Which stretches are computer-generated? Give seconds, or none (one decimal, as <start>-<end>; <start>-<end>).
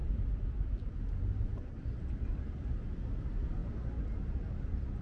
0.0-0.8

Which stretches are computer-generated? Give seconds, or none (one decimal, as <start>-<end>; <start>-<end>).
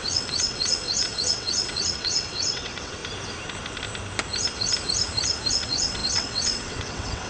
0.0-3.0; 5.5-7.3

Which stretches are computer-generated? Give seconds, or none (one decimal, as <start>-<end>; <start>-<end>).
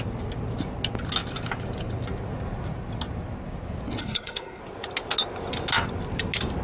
4.0-4.6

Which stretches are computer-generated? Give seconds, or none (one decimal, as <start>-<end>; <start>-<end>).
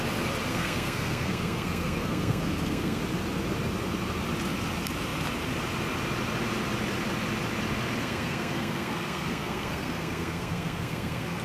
0.5-3.0; 8.0-11.4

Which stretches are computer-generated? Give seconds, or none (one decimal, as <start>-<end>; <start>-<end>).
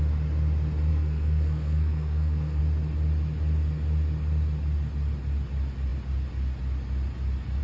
0.9-2.6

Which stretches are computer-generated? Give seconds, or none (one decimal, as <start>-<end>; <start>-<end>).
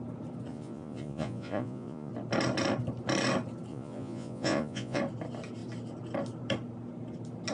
0.5-2.1; 3.7-5.0